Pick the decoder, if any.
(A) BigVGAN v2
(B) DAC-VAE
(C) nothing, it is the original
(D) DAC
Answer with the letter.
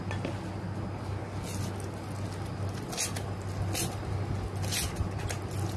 C